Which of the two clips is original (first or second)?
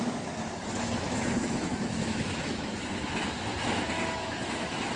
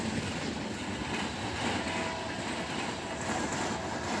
second